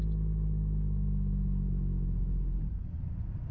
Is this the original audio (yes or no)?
yes